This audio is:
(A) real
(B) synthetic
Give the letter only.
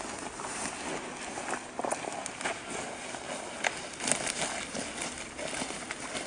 A